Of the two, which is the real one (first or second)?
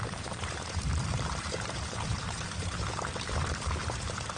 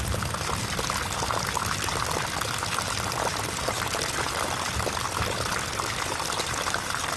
second